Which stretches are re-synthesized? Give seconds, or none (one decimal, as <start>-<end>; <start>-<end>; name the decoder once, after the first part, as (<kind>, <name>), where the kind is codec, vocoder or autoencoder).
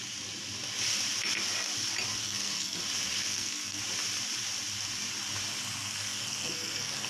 2.2-2.8 (codec, SNAC); 3.3-3.8; 5.8-7.1